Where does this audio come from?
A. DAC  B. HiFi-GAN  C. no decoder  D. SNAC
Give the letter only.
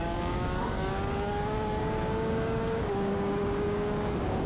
A